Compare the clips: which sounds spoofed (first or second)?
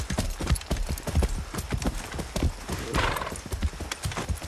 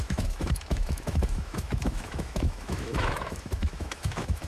second